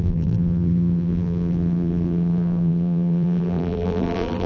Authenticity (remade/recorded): remade